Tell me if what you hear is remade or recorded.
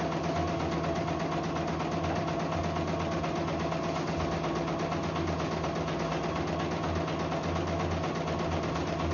recorded